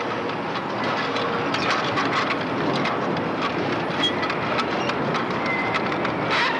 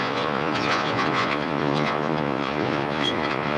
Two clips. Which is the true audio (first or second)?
first